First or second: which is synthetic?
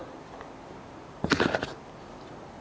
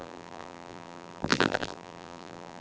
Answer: second